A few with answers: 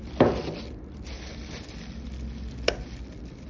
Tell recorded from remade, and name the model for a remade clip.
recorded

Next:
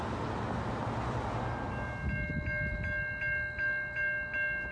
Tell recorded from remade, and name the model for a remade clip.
recorded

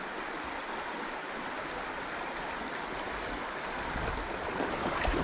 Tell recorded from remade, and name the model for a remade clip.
recorded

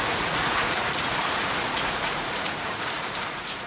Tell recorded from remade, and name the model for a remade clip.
remade, vocoder, Vocos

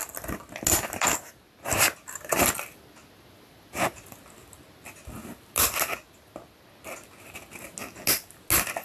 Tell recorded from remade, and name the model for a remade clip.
recorded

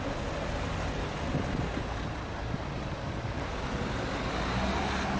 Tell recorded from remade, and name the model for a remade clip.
recorded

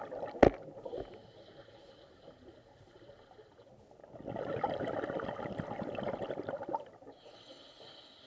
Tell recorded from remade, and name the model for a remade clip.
recorded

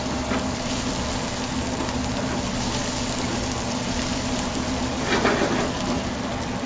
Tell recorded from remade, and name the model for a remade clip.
recorded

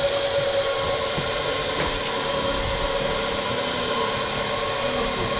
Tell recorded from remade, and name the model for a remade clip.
recorded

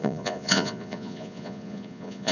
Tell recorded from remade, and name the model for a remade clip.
remade, vocoder, Vocos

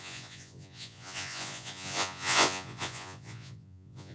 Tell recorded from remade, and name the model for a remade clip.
remade, vocoder, Vocos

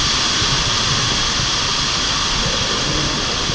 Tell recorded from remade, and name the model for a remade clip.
recorded